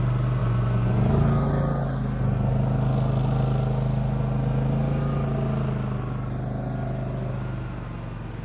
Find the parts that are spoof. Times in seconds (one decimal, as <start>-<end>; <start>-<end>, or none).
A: 0.4-1.1